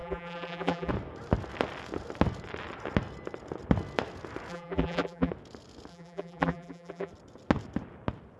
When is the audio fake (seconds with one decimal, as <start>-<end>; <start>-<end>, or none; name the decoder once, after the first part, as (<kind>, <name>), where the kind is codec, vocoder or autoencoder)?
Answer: 0.0-0.9 (vocoder, BigVGAN v2); 4.5-5.3; 5.9-7.1